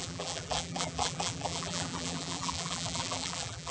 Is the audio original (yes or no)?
no